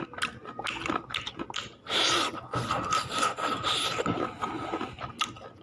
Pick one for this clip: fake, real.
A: real